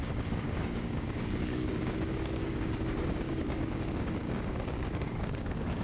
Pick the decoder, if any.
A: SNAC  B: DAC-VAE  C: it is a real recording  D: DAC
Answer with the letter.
D